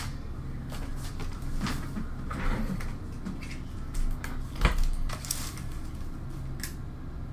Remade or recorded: recorded